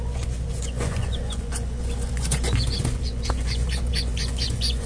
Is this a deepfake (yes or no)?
yes